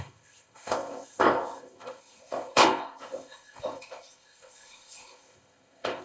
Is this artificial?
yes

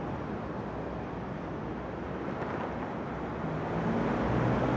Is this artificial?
no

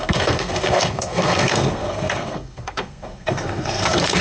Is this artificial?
yes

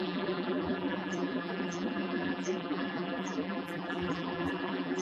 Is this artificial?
yes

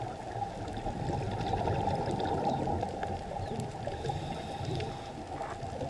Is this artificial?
no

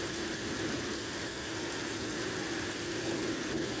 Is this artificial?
no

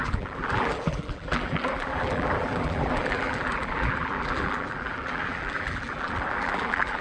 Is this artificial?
yes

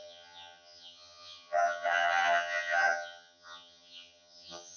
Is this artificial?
yes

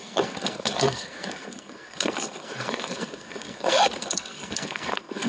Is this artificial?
yes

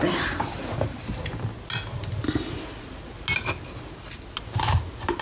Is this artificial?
no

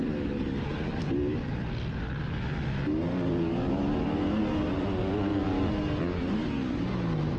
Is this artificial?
no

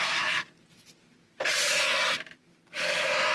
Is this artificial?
no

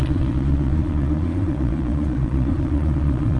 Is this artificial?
yes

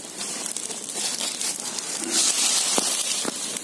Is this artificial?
yes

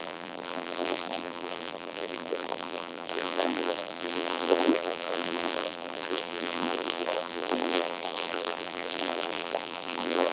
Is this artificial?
yes